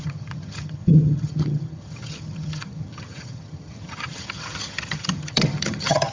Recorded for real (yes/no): no